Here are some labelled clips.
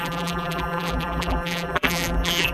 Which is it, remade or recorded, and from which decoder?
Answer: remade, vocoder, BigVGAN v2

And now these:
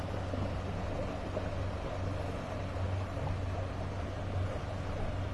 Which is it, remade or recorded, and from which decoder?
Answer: recorded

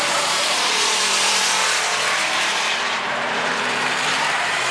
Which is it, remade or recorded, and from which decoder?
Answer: remade, vocoder, BigVGAN v2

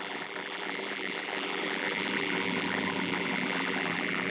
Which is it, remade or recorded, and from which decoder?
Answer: remade, vocoder, BigVGAN v2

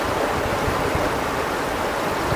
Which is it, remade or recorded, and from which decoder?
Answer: recorded